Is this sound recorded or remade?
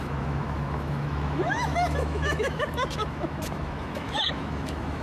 remade